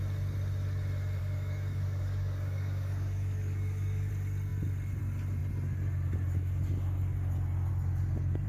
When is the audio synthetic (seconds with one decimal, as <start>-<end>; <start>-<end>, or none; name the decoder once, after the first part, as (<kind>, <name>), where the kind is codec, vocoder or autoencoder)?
1.2-4.1 (codec, DAC)